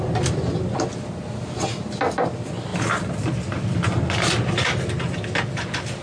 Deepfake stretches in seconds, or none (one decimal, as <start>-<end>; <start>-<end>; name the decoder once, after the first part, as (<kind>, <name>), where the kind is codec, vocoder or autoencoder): none